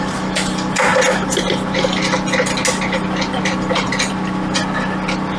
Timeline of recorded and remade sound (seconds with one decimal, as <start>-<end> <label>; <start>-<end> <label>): 0.0-5.4 recorded